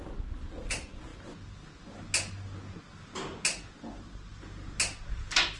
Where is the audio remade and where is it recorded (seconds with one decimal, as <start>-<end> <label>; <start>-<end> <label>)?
0.0-5.6 recorded

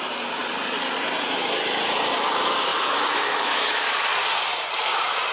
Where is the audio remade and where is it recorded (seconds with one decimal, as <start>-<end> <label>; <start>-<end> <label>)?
0.0-2.7 recorded; 2.7-3.9 remade; 3.9-5.3 recorded

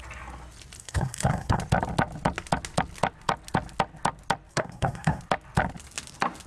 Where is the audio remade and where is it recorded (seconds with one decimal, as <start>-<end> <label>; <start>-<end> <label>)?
0.0-0.8 recorded; 0.8-1.6 remade; 1.6-4.5 recorded; 4.5-5.2 remade; 5.2-6.5 recorded

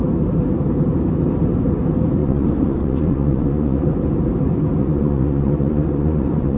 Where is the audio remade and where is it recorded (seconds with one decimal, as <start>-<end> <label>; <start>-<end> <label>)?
0.0-2.2 recorded; 2.2-3.9 remade; 3.9-4.8 recorded; 4.8-6.6 remade